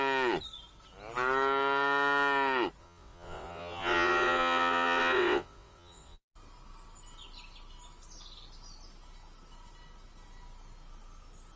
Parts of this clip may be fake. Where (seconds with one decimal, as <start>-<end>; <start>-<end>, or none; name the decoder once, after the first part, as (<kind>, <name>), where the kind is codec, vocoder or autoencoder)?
2.8-6.3 (vocoder, WaveNeXt)